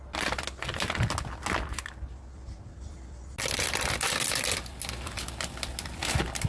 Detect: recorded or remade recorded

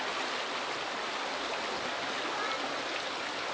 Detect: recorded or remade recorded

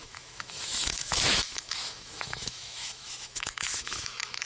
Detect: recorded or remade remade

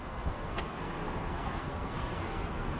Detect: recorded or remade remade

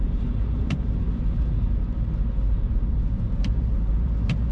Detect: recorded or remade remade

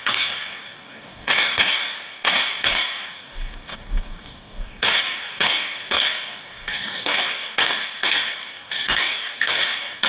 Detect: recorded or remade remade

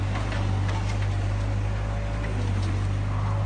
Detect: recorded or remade recorded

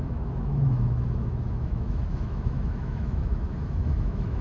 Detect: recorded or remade remade